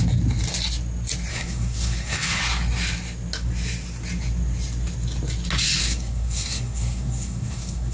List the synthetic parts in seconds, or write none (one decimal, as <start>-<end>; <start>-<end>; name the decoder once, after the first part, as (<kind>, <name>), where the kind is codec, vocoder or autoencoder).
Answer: 1.3-2.4 (codec, SNAC); 5.8-7.9